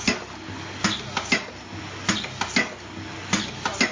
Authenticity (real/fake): real